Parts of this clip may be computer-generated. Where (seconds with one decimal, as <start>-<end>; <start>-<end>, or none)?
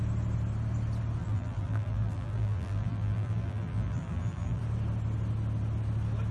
1.2-4.6